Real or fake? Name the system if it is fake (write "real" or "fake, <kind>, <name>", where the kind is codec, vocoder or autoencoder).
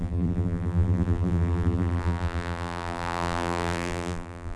fake, vocoder, BigVGAN v2